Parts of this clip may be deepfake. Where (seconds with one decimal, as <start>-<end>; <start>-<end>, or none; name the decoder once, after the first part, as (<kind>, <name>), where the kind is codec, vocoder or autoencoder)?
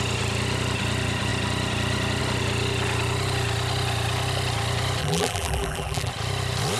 5.0-6.1 (vocoder, BigVGAN v2)